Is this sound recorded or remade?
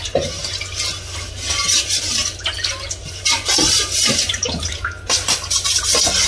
remade